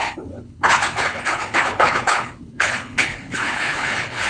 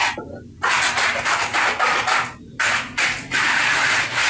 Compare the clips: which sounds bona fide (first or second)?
second